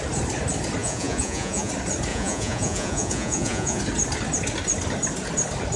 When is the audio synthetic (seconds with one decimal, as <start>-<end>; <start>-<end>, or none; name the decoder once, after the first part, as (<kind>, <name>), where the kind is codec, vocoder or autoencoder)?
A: 0.8-1.7 (vocoder, Vocos); 2.1-3.8

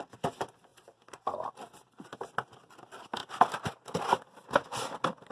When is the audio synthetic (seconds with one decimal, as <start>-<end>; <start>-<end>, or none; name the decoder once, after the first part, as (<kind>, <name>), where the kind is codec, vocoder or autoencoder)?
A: none

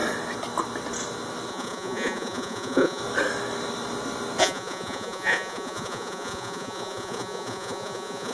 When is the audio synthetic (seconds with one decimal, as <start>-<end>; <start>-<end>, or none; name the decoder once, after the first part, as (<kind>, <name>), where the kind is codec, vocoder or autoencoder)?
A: 1.5-3.0 (vocoder, Vocos); 4.4-8.3